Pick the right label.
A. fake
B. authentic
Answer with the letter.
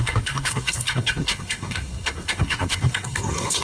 A